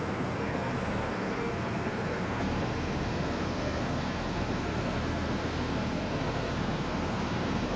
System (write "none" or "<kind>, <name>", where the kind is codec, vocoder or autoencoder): codec, SNAC